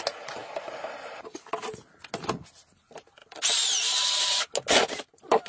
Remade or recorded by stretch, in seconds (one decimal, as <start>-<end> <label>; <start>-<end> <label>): 0.0-3.2 recorded; 3.2-4.4 remade; 4.4-5.5 recorded